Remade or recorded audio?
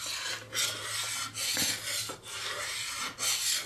recorded